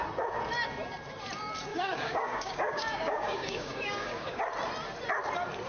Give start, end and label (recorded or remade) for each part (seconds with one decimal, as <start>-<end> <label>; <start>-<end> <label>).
0.0-1.7 recorded; 1.7-4.4 remade; 4.4-5.7 recorded